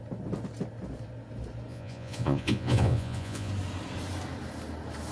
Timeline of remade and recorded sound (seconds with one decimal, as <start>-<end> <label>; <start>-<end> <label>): 0.0-1.7 recorded; 1.7-3.5 remade; 3.5-5.1 recorded